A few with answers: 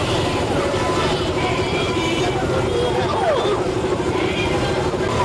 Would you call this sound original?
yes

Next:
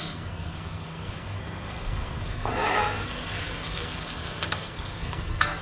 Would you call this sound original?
no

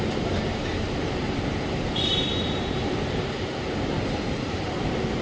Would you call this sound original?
no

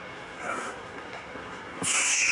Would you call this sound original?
no